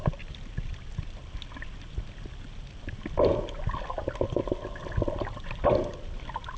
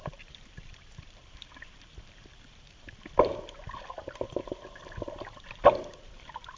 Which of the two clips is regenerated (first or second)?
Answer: second